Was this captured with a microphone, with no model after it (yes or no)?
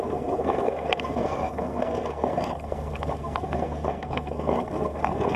no